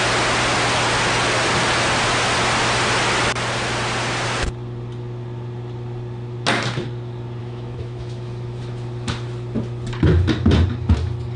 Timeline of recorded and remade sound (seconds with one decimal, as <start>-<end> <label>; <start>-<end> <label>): 0.0-7.4 recorded; 7.4-8.6 remade; 8.6-11.4 recorded